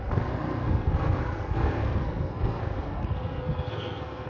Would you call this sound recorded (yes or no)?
no